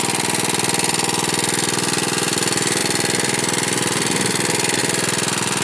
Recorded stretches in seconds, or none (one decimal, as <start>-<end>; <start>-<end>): 0.0-5.6